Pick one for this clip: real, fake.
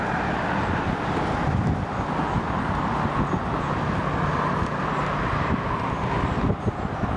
real